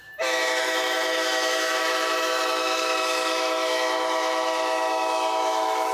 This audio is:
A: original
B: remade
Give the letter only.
B